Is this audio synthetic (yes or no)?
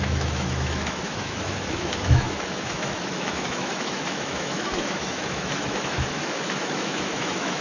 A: yes